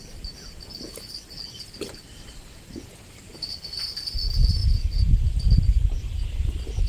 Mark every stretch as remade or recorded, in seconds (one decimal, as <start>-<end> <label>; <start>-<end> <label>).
0.0-3.5 recorded; 3.5-4.1 remade; 4.1-6.9 recorded